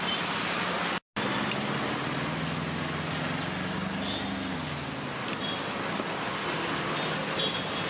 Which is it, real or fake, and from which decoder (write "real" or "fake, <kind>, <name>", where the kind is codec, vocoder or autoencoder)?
real